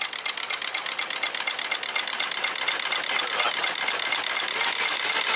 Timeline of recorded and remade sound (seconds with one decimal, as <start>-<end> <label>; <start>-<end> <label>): 0.0-5.4 recorded